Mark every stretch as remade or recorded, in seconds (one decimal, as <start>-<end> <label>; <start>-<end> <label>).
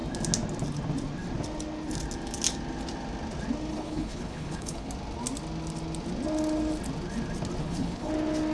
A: 0.0-3.7 recorded; 3.7-4.9 remade; 4.9-7.6 recorded; 7.6-8.1 remade; 8.1-8.5 recorded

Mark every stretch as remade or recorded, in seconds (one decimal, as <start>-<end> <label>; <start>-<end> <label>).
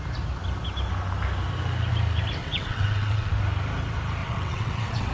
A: 0.0-2.4 recorded; 2.4-3.3 remade; 3.3-4.2 recorded; 4.2-5.1 remade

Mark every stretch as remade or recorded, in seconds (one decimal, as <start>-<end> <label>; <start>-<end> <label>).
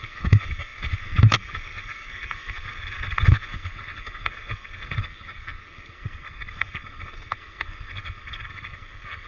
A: 0.0-9.3 remade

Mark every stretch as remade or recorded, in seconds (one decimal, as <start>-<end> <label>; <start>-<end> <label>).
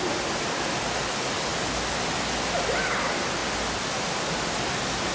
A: 0.0-5.1 recorded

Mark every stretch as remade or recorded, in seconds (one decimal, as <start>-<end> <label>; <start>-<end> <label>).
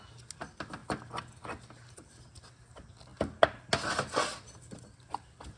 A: 0.0-5.6 recorded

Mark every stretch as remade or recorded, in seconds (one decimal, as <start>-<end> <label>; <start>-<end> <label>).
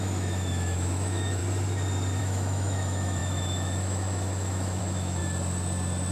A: 0.0-1.4 remade; 1.4-2.2 recorded; 2.2-5.2 remade; 5.2-6.1 recorded